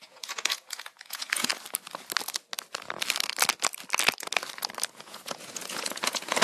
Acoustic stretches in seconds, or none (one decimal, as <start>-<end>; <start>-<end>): 1.5-5.0